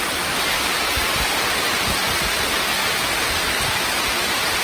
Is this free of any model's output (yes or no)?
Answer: yes